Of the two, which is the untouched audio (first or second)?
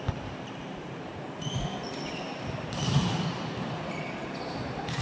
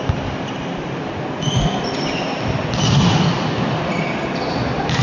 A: second